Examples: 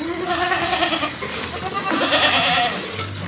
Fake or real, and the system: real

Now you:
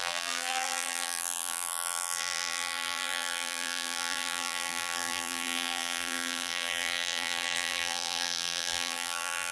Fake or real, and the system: fake, vocoder, BigVGAN v2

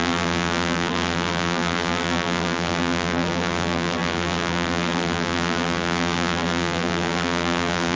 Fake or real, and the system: fake, vocoder, BigVGAN v2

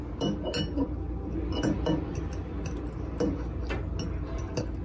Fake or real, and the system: real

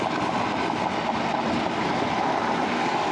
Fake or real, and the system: real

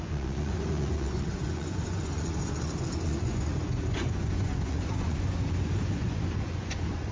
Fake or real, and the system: fake, vocoder, Vocos